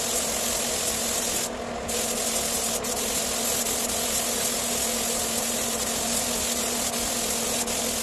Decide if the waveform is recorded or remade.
recorded